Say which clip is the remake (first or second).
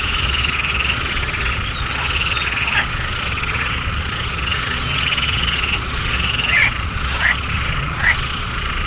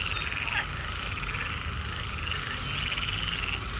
first